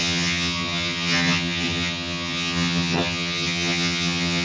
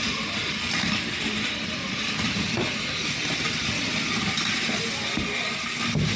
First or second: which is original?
second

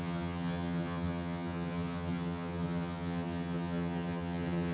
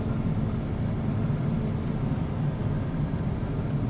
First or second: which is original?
second